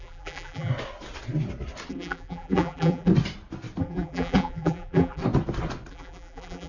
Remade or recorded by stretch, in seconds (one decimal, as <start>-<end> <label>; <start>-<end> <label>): 0.0-0.7 remade; 0.7-1.9 recorded; 1.9-3.1 remade; 3.1-3.8 recorded; 3.8-5.2 remade; 5.2-5.9 recorded; 5.9-6.7 remade